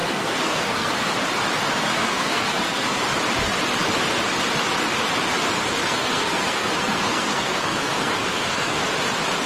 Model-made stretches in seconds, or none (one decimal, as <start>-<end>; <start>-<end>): 0.0-1.1; 1.9-3.0; 5.8-8.8